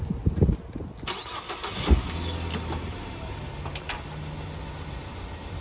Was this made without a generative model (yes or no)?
yes